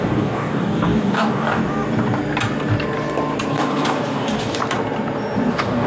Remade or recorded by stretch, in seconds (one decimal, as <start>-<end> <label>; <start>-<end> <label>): 0.0-1.6 remade; 1.6-3.5 recorded; 3.5-4.6 remade; 4.6-5.5 recorded; 5.5-5.9 remade